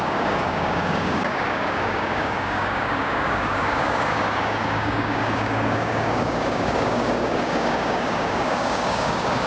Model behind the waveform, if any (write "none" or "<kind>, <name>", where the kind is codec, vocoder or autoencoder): codec, DAC